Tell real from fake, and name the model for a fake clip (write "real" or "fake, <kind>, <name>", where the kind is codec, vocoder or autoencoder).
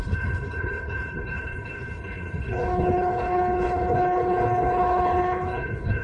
fake, codec, HILCodec